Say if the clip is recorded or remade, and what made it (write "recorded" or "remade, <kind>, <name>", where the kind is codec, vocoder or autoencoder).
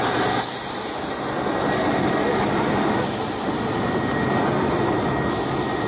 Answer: recorded